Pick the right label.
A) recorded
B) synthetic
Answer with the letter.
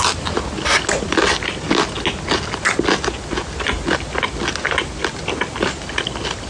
A